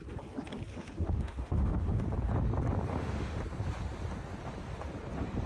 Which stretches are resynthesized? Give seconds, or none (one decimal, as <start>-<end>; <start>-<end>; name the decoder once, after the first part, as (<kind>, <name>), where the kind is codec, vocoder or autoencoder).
0.7-2.0 (autoencoder, DAC-VAE); 2.9-3.4